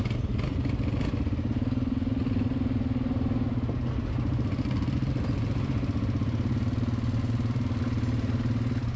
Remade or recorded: recorded